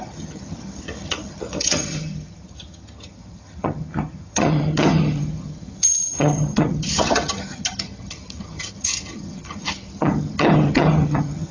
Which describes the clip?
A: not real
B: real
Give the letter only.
A